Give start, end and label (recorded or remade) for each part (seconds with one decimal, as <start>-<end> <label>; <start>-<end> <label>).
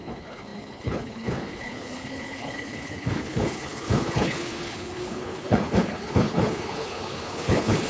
0.0-7.9 remade